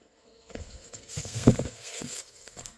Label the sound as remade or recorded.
remade